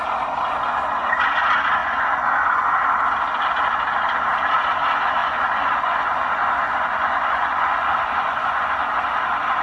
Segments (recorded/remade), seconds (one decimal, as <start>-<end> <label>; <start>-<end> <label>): 0.0-1.8 recorded; 1.8-2.7 remade; 2.7-5.2 recorded; 5.2-8.7 remade; 8.7-9.6 recorded